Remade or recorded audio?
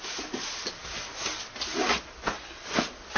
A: recorded